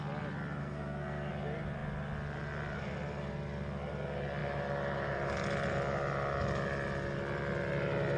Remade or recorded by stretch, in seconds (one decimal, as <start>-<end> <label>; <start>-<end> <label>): 0.0-0.6 recorded; 0.6-1.3 remade; 1.3-8.2 recorded